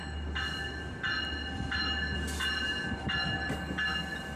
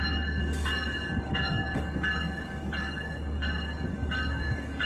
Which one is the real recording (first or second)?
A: first